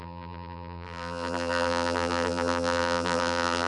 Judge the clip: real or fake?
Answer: fake